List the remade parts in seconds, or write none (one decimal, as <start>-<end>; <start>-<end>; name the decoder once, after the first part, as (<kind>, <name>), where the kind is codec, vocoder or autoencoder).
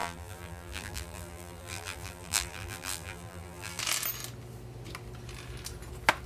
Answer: 0.0-3.8 (vocoder, BigVGAN v2)